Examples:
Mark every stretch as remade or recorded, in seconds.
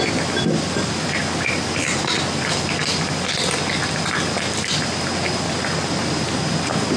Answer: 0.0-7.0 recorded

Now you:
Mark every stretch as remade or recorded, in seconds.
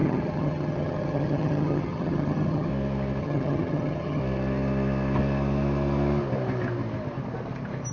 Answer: 0.0-2.7 remade; 2.7-3.2 recorded; 3.2-4.2 remade; 4.2-7.9 recorded